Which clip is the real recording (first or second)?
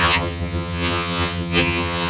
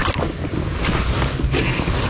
second